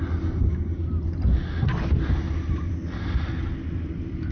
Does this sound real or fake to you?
real